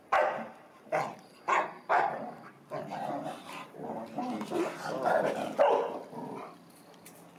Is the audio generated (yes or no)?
no